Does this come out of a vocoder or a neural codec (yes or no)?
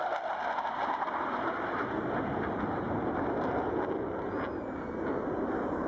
no